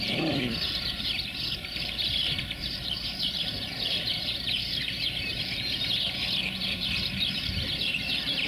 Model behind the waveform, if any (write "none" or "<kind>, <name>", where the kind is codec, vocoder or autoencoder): vocoder, BigVGAN v2